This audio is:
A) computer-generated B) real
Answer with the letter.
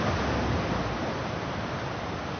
B